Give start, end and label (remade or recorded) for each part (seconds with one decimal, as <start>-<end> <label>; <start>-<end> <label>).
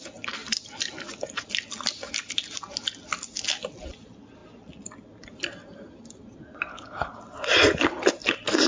0.0-6.7 recorded; 6.7-7.2 remade; 7.2-8.7 recorded